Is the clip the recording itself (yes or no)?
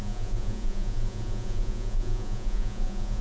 no